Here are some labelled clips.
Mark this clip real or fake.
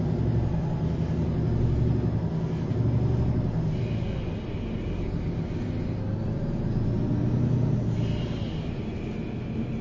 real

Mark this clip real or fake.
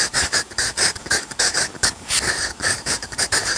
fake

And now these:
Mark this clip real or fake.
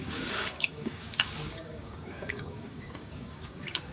fake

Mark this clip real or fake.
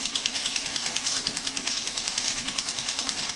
fake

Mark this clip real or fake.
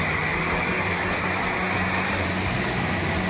real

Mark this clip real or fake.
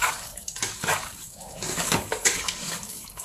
fake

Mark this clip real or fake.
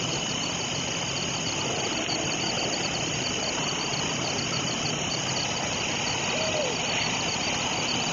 real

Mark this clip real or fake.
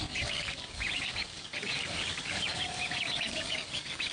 fake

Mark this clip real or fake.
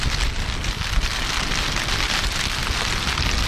real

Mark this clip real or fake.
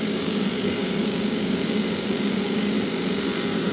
fake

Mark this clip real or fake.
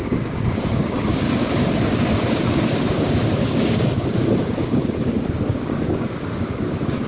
fake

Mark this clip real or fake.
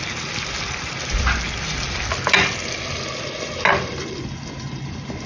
real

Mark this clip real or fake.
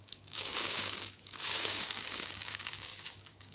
fake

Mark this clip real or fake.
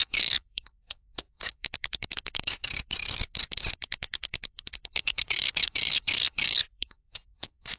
fake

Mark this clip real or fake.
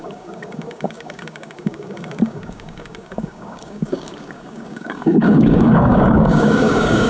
fake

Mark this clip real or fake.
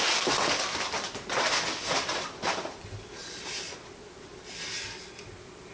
real